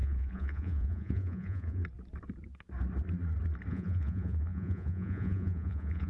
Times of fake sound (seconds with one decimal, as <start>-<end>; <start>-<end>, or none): 0.0-1.8; 3.7-6.1